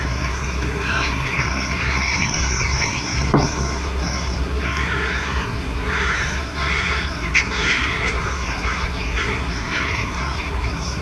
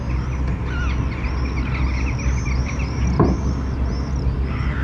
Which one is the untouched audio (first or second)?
second